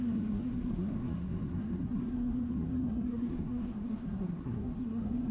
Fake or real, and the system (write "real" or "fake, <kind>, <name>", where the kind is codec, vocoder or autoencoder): fake, codec, SNAC